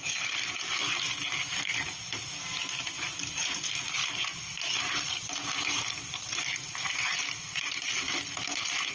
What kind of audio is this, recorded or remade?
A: recorded